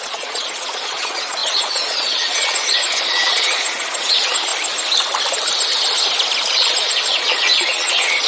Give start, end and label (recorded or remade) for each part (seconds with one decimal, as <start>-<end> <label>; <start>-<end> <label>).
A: 0.0-4.5 remade; 4.5-6.5 recorded; 6.5-8.3 remade